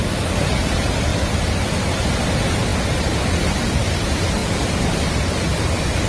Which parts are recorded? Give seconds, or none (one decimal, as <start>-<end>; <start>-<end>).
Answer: 0.0-6.1